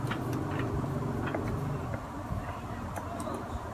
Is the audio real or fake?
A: fake